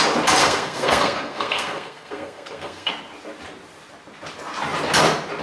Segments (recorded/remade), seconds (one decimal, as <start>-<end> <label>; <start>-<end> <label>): 0.0-0.4 recorded; 0.4-2.9 remade; 2.9-5.4 recorded